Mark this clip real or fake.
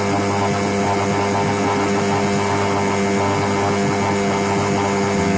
real